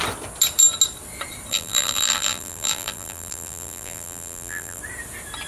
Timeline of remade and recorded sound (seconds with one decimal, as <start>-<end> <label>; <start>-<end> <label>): 0.0-1.5 recorded; 1.5-4.8 remade; 4.8-5.5 recorded